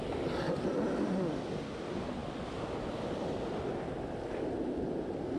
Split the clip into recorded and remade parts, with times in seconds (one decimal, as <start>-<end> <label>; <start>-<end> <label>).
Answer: 0.0-5.4 recorded